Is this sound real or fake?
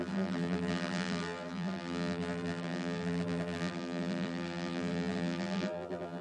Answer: fake